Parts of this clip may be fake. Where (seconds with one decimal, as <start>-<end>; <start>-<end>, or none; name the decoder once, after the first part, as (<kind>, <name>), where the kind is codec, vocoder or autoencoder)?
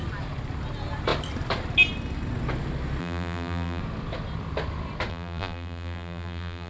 3.0-3.8 (vocoder, BigVGAN v2); 5.1-6.7